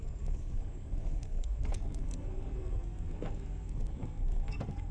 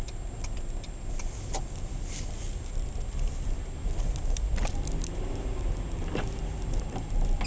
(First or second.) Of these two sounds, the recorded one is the second